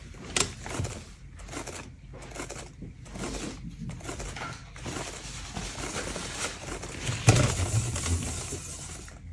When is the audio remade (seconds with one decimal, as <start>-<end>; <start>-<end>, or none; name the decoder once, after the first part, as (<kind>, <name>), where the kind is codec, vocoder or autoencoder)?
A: none